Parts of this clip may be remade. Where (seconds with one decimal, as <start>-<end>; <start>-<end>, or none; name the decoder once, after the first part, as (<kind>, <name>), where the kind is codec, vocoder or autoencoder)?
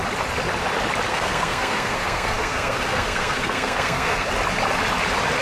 1.1-4.3 (codec, SNAC)